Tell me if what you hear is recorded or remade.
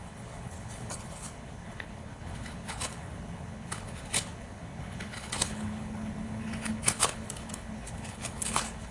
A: remade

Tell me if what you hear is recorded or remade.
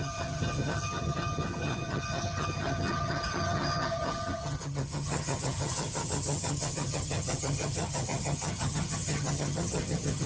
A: remade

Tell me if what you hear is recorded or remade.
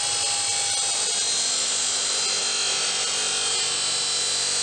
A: recorded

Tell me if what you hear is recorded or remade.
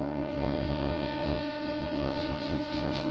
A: remade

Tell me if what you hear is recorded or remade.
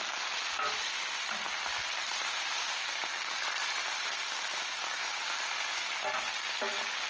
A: recorded